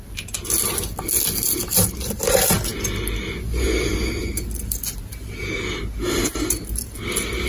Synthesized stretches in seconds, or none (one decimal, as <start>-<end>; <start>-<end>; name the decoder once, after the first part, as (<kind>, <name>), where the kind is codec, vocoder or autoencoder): none